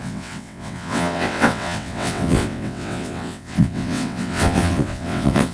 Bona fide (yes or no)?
no